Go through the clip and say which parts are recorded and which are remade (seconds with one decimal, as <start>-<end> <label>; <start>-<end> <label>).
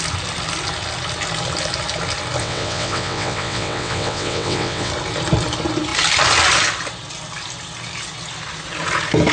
0.0-2.4 recorded; 2.4-4.9 remade; 4.9-9.3 recorded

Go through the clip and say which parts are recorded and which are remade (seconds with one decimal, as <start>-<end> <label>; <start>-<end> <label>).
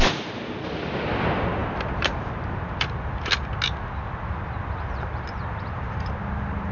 0.0-6.7 recorded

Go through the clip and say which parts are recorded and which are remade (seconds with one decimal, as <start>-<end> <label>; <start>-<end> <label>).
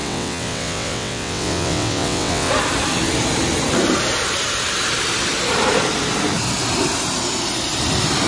0.0-2.5 remade; 2.5-8.3 recorded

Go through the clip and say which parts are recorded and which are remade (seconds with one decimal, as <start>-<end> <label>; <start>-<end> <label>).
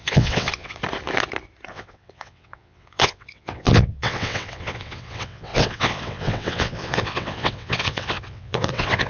0.0-0.8 remade; 0.8-1.7 recorded; 1.7-9.1 remade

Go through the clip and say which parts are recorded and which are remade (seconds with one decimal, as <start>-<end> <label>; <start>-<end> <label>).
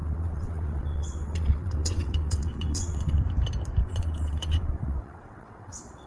0.0-3.2 remade; 3.2-3.8 recorded; 3.8-6.1 remade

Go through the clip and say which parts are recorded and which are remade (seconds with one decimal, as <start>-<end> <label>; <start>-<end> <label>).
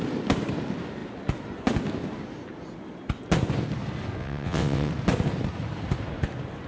0.0-4.2 recorded; 4.2-4.9 remade; 4.9-6.7 recorded